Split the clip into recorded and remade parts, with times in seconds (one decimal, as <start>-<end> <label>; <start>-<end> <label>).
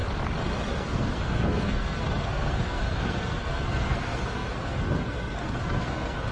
0.0-0.7 recorded; 0.7-6.3 remade